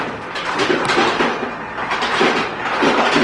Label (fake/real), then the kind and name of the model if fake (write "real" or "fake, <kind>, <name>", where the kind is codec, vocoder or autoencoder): real